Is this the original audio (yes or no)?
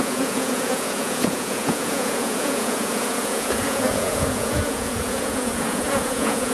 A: no